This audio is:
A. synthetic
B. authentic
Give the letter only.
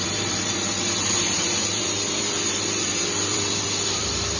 A